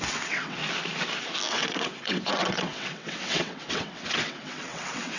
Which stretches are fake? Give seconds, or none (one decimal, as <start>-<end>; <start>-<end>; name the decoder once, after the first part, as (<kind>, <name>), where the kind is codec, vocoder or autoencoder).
0.0-0.6 (vocoder, WaveNeXt); 1.5-5.2